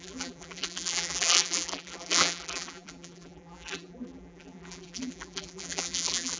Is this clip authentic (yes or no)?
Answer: no